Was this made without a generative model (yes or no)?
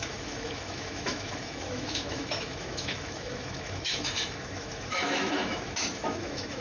no